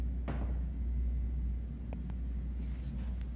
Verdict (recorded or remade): recorded